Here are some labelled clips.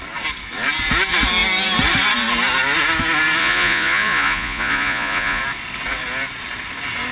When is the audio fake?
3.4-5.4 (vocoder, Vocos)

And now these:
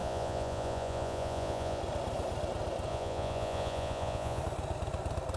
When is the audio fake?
0.0-1.8 (vocoder, Vocos); 2.9-4.4

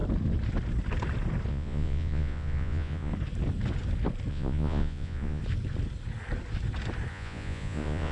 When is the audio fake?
1.5-3.1 (vocoder, Vocos); 4.3-5.4; 7.1-8.1

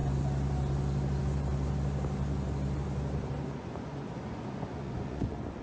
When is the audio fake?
3.6-5.6 (vocoder, Vocos)